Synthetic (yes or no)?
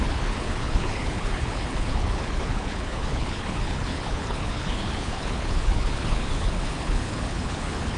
yes